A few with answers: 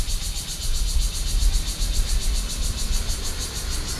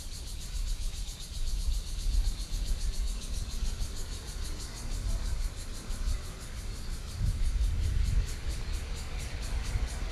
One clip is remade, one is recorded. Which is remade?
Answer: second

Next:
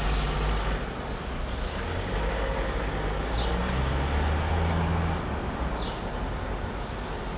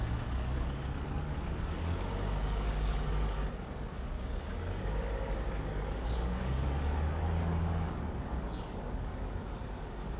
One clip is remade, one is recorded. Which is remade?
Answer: second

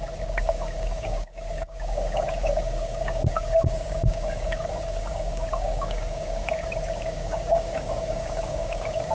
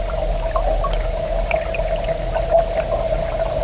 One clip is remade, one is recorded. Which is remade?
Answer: first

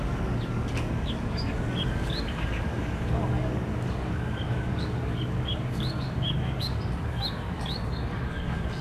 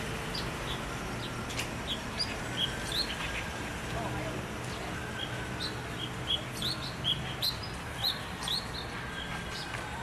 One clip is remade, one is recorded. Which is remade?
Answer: first